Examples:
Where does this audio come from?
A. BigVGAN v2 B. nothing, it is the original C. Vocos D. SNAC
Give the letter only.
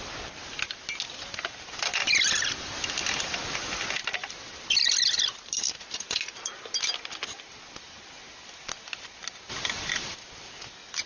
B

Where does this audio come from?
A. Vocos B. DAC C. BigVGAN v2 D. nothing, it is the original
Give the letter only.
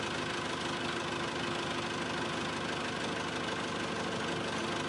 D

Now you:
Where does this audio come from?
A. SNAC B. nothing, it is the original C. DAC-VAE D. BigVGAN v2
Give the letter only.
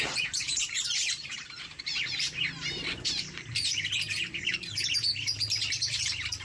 D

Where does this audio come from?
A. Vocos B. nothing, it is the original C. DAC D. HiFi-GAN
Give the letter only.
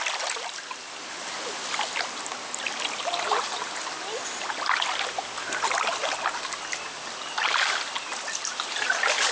B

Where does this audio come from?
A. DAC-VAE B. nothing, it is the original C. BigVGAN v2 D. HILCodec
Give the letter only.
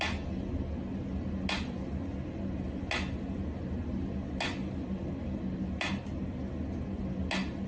B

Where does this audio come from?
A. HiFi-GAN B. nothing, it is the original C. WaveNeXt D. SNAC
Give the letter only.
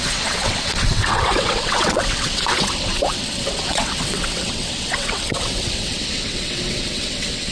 C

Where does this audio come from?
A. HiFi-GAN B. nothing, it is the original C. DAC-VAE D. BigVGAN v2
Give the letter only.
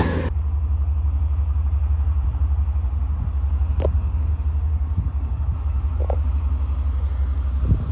B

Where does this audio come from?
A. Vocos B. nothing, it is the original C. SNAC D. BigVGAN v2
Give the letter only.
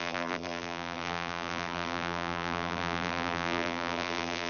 D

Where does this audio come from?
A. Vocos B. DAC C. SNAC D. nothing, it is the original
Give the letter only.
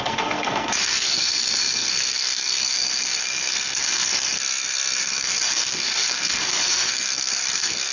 C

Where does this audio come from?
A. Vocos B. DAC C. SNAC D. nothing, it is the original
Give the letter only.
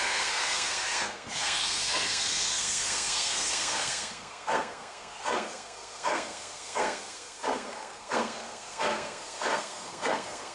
C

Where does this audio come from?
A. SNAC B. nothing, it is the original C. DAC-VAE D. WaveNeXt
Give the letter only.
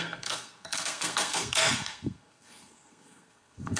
A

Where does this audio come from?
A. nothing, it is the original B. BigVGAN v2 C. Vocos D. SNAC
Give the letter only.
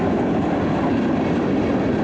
A